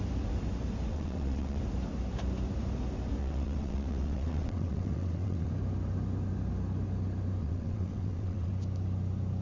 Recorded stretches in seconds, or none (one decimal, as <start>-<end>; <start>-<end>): 0.0-0.9; 1.6-3.2; 5.5-7.4; 8.5-9.4